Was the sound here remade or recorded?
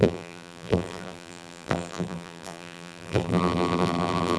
remade